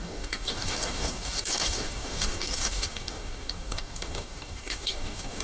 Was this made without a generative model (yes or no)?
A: no